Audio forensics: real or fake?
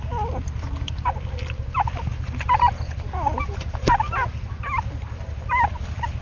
real